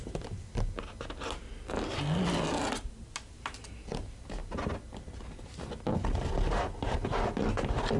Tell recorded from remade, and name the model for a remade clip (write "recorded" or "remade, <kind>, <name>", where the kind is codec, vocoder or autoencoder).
recorded